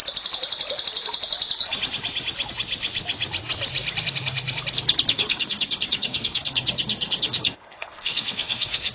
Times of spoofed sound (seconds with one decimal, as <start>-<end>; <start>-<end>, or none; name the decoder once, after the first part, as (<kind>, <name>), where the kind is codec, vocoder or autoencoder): 5.1-8.9 (codec, SNAC)